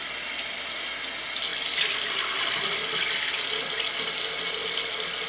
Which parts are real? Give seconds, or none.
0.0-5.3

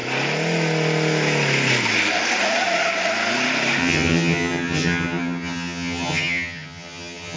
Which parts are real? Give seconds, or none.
0.0-3.8

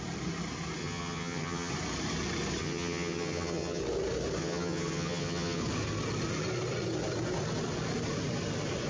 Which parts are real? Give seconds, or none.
0.0-0.8; 1.7-2.6; 3.8-4.4; 5.6-8.9

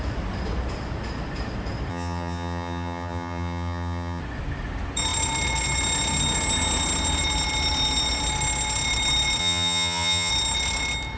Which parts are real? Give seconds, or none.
0.0-1.9; 4.2-9.4; 10.3-11.2

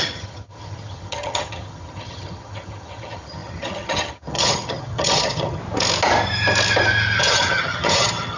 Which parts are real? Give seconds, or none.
5.6-7.2

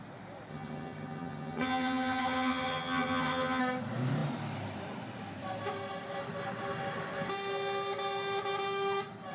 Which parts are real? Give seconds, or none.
0.0-0.5; 3.6-9.3

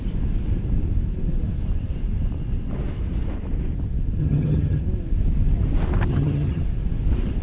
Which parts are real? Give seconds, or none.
0.0-4.2; 4.8-6.1; 6.6-7.4

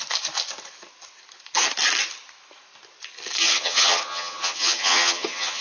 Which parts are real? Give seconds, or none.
0.0-3.4